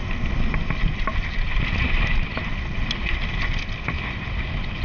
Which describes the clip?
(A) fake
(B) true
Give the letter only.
B